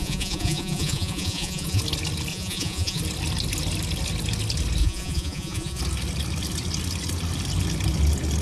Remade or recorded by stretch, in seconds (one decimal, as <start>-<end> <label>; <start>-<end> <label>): 0.0-1.8 remade; 1.8-2.3 recorded; 2.3-3.0 remade; 3.0-4.8 recorded; 4.8-5.8 remade; 5.8-8.4 recorded

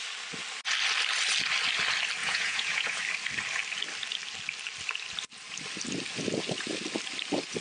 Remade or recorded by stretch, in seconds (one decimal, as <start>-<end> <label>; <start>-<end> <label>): 0.0-2.2 recorded; 2.2-3.0 remade; 3.0-7.6 recorded

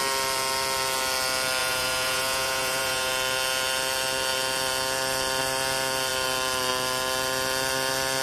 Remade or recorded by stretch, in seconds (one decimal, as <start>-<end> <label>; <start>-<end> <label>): 0.0-1.6 recorded; 1.6-3.1 remade; 3.1-8.2 recorded

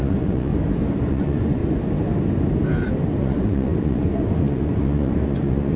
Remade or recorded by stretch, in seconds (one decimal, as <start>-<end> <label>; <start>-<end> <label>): 0.0-0.5 remade; 0.5-1.0 recorded; 1.0-1.6 remade; 1.6-3.2 recorded; 3.2-5.8 remade

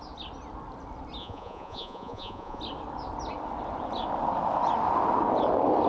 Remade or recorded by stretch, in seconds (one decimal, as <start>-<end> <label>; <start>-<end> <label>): 0.0-1.2 recorded; 1.2-2.6 remade; 2.6-5.9 recorded

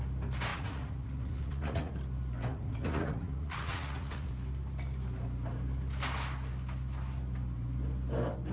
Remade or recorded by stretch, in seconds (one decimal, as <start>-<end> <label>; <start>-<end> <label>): 0.0-0.5 recorded; 0.5-1.9 remade; 1.9-2.5 recorded; 2.5-4.3 remade; 4.3-8.5 recorded